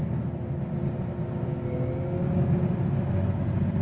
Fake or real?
real